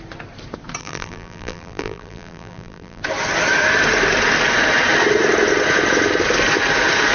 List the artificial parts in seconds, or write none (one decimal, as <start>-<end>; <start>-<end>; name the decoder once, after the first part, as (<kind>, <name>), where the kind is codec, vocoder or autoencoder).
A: 0.8-3.0 (vocoder, BigVGAN v2)